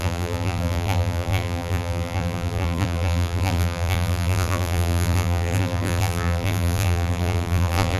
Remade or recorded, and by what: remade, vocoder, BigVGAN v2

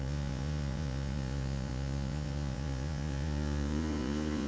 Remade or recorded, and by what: remade, vocoder, Vocos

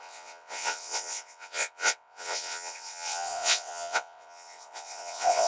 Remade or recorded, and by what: remade, vocoder, WaveNeXt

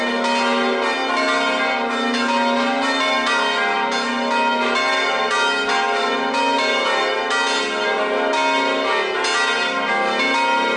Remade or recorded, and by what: recorded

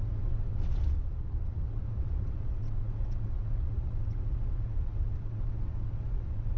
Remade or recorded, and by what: remade, vocoder, WaveNeXt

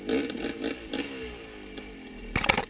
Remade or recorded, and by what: recorded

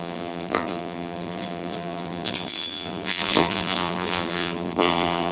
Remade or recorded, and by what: remade, vocoder, BigVGAN v2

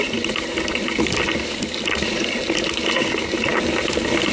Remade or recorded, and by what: recorded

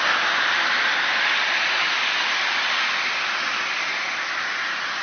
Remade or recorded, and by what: recorded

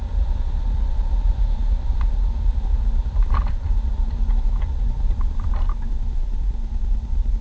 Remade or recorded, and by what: remade, vocoder, BigVGAN v2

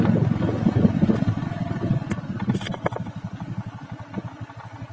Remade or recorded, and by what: recorded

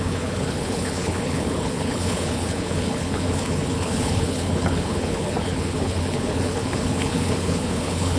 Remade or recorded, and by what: remade, codec, HILCodec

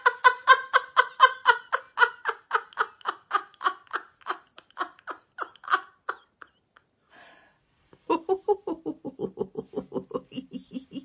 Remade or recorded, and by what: recorded